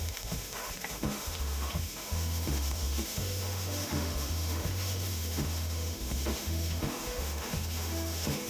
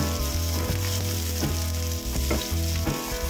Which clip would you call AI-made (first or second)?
first